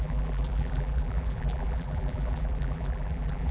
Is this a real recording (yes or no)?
no